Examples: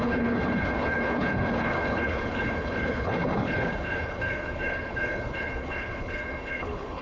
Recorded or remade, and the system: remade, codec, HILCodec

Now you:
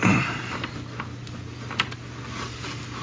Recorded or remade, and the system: recorded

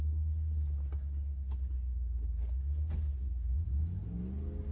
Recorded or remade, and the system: recorded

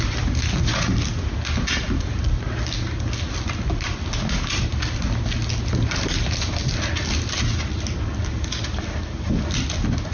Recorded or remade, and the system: recorded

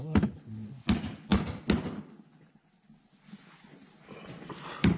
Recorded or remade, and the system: recorded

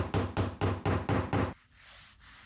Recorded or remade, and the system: recorded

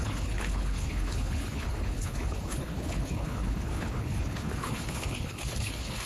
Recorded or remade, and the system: remade, codec, HILCodec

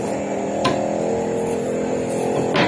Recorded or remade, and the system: recorded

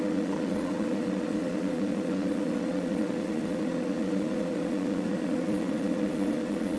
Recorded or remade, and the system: remade, vocoder, Vocos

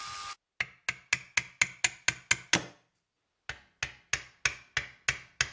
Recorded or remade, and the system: recorded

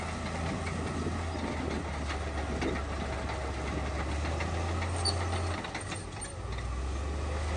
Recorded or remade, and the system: recorded